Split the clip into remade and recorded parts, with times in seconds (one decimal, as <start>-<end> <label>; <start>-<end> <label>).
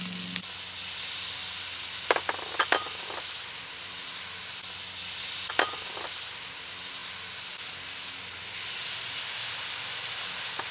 0.0-10.7 recorded